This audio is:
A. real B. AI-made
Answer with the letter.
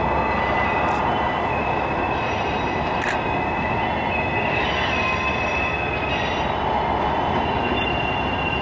A